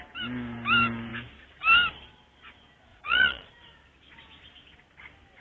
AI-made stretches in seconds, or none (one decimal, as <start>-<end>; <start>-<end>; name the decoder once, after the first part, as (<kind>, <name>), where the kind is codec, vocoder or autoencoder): 2.9-3.5 (vocoder, Vocos)